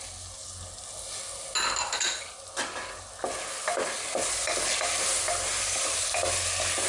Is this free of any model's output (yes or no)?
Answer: yes